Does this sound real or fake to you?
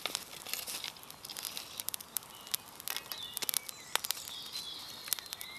real